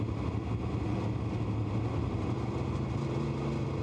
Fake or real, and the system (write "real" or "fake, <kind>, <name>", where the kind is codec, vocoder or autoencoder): real